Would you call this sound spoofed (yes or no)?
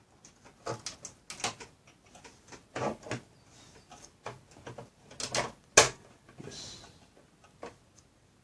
no